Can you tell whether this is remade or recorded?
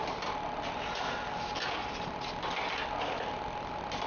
recorded